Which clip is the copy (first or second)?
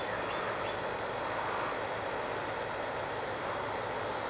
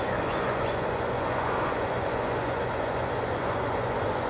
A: second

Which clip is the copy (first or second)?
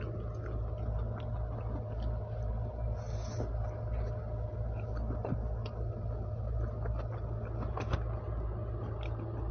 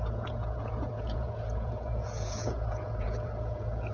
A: second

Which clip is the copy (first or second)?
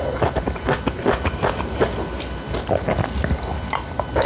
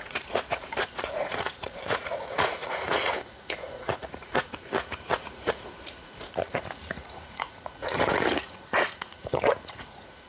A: second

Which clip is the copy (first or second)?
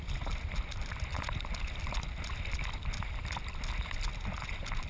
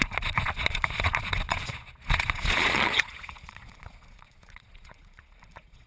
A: second